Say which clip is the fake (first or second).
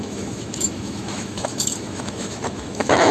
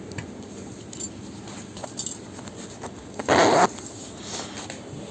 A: first